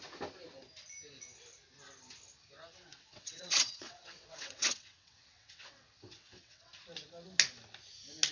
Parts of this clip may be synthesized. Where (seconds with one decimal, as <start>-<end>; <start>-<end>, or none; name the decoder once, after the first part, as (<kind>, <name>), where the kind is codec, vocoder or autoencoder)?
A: 2.9-6.7 (vocoder, WaveNeXt)